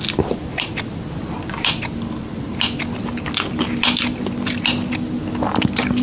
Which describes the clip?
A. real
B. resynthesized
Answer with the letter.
A